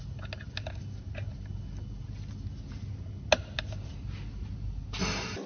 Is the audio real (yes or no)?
yes